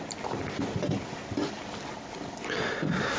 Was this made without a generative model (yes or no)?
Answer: yes